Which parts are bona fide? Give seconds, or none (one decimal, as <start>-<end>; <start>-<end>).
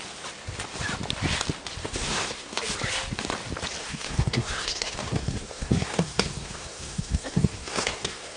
0.0-1.8; 2.6-3.8